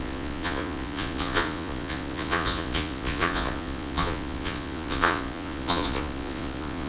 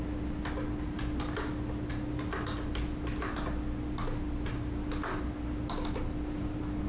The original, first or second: second